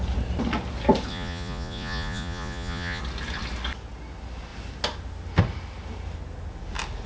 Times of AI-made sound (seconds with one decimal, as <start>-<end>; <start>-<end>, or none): 1.1-3.0

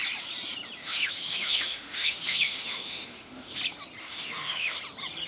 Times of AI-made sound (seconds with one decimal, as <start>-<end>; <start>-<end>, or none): 0.8-3.6; 4.0-4.8

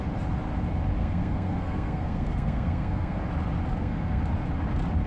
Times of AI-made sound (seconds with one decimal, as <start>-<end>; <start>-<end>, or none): 1.0-3.2; 3.7-4.2

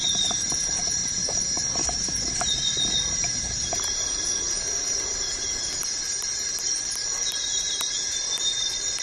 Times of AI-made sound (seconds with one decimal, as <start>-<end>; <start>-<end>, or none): 0.0-9.0

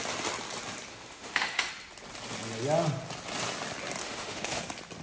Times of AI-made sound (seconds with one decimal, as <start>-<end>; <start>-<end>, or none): 0.9-1.7; 4.0-4.6